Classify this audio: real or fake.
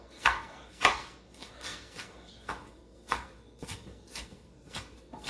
fake